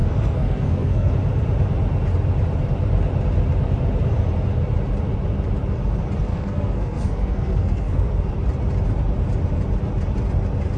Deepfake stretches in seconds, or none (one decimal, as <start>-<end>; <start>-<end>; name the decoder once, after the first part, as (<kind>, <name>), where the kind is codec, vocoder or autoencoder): 0.0-1.1 (codec, SNAC); 6.3-8.3